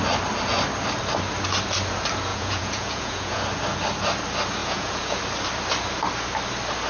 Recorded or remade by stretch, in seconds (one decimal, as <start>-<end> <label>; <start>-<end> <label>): 0.0-2.3 recorded; 2.3-3.4 remade; 3.4-4.6 recorded; 4.6-5.2 remade; 5.2-6.9 recorded